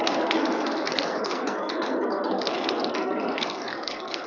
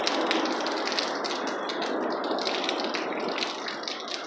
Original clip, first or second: second